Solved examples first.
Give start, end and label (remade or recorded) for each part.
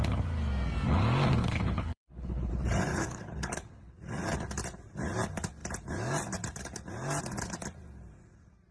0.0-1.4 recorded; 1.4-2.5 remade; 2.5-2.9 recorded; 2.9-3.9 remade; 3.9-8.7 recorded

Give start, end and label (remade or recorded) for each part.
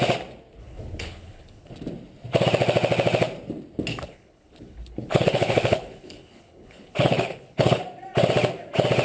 0.0-0.6 recorded; 0.6-1.7 remade; 1.7-3.9 recorded; 3.9-7.8 remade; 7.8-9.0 recorded